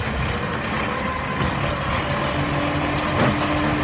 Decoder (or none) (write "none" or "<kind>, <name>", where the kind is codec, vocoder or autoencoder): none